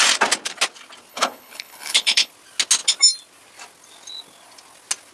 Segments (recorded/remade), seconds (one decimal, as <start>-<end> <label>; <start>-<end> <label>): 0.0-1.1 recorded; 1.1-2.3 remade; 2.3-5.1 recorded